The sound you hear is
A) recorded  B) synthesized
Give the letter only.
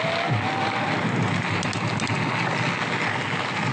A